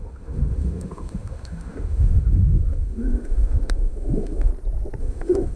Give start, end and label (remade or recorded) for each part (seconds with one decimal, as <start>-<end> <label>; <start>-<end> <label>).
0.0-4.5 remade; 4.5-5.0 recorded; 5.0-5.6 remade